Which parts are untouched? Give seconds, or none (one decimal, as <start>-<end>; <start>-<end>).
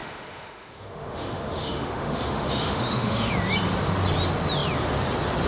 3.3-5.5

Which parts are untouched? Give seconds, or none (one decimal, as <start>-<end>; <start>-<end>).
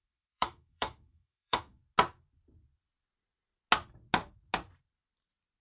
1.8-5.6